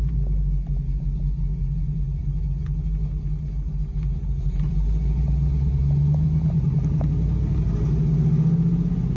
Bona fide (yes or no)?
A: yes